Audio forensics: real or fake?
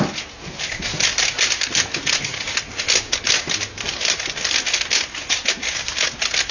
real